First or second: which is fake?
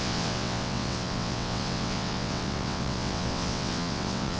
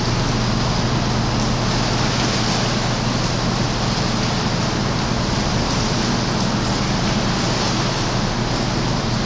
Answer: first